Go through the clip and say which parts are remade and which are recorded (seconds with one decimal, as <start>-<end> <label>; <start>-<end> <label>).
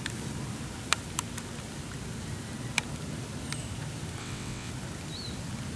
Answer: 0.0-4.2 recorded; 4.2-4.7 remade; 4.7-5.8 recorded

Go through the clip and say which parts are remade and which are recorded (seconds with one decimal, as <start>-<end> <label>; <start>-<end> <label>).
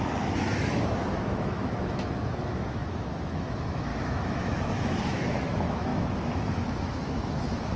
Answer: 0.0-7.8 remade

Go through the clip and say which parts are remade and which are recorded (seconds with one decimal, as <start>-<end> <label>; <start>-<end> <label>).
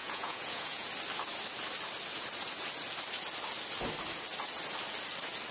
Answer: 0.0-0.9 remade; 0.9-5.5 recorded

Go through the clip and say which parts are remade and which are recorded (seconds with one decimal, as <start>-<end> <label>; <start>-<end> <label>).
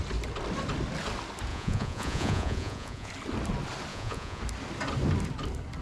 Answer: 0.0-1.5 recorded; 1.5-3.1 remade; 3.1-3.9 recorded; 3.9-4.4 remade; 4.4-5.8 recorded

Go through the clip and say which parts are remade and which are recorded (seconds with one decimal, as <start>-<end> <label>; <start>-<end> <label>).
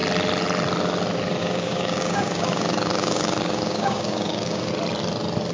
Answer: 0.0-1.4 recorded; 1.4-4.7 remade; 4.7-5.5 recorded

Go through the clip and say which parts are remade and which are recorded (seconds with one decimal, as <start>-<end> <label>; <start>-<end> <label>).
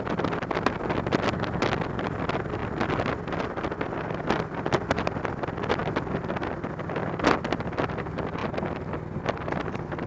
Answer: 0.0-10.1 recorded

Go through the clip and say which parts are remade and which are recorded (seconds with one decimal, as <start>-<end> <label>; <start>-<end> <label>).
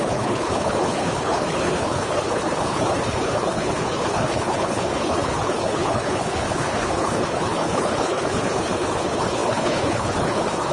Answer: 0.0-10.7 remade